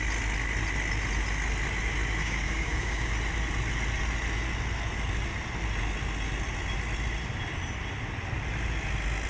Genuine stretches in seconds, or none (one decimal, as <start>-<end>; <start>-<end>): 0.0-2.2; 3.1-9.3